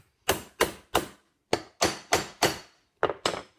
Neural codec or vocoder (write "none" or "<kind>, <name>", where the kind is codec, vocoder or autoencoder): none